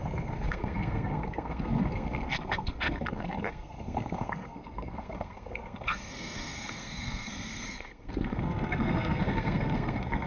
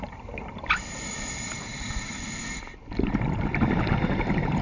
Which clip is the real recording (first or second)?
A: second